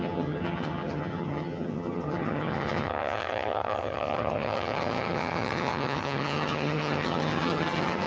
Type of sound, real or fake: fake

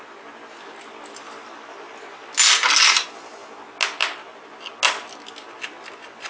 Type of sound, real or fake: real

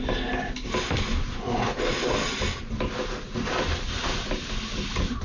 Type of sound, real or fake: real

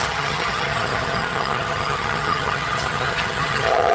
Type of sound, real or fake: fake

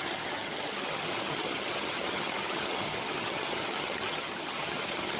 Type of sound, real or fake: fake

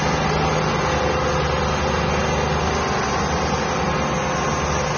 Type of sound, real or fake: real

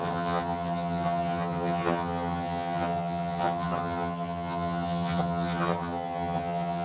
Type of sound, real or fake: fake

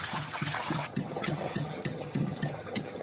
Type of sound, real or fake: fake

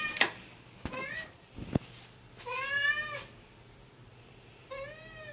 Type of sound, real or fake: real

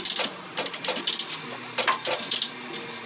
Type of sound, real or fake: real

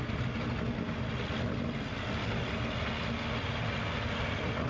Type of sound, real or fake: real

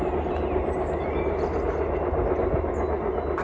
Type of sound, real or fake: real